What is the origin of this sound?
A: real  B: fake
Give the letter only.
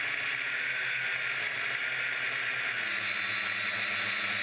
A